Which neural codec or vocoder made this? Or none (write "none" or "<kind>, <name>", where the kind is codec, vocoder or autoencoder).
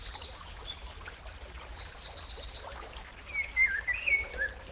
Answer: none